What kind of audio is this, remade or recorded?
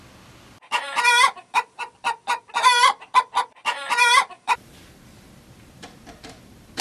remade